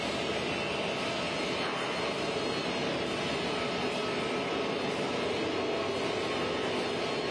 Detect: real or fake real